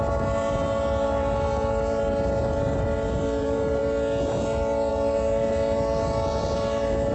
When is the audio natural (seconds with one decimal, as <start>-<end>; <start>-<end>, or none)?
3.8-4.9